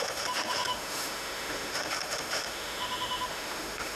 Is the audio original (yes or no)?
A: no